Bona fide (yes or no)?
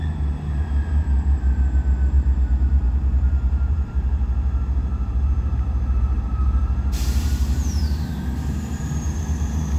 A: no